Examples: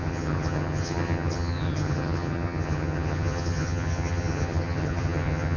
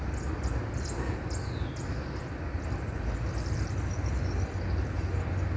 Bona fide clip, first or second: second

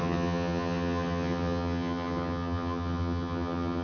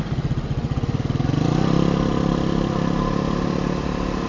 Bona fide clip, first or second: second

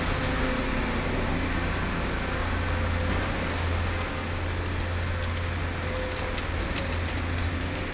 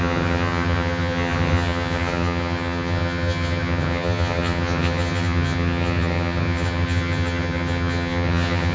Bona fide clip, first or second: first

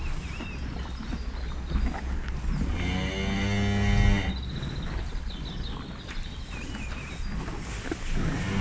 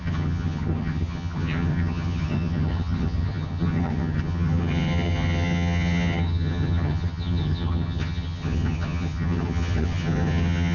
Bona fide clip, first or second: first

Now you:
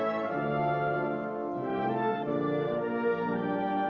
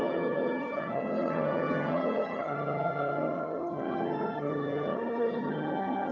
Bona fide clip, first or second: first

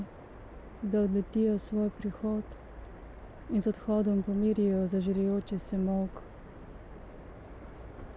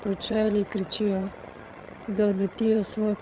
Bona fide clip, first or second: first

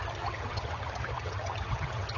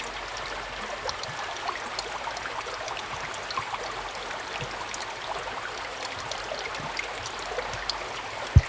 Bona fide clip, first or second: second